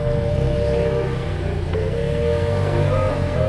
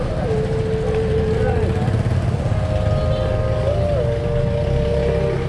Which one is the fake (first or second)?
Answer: first